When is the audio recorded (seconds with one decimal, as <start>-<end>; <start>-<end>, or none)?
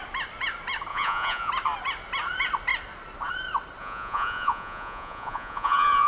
0.0-0.9; 1.5-3.8